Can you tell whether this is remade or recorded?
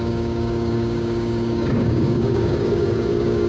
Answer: remade